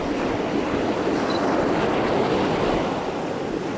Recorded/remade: recorded